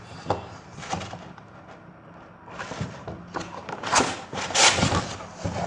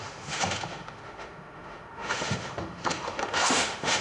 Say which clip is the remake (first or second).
second